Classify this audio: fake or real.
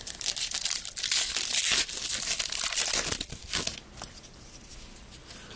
real